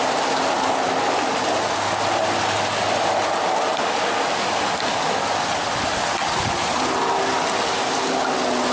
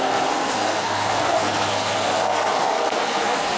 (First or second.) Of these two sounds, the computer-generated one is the second